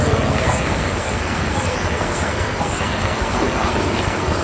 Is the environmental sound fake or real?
fake